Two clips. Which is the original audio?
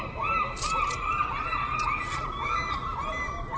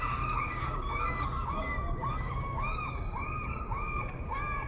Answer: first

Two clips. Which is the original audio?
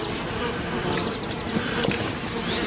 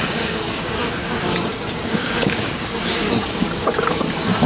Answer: first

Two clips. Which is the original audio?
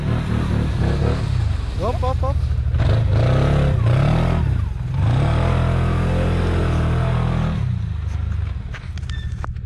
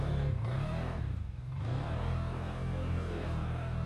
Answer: first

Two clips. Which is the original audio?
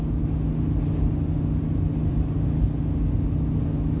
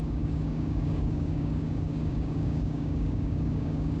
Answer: first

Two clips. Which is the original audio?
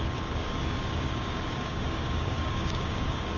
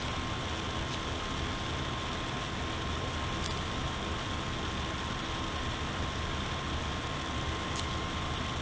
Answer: second